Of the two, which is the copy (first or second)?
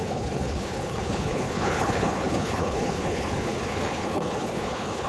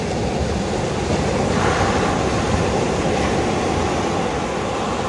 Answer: first